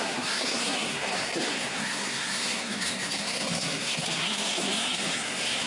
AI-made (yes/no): yes